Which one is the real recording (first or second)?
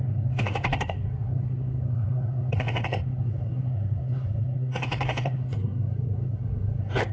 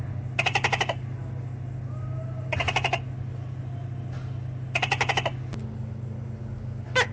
second